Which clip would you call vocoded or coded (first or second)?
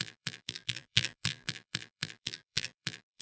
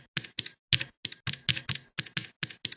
first